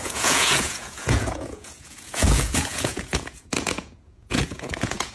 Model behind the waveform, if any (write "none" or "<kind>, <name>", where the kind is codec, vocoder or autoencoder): vocoder, Vocos